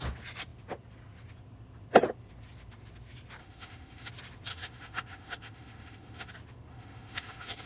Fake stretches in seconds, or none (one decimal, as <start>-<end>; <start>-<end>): 3.4-4.1; 4.5-6.3; 6.7-7.7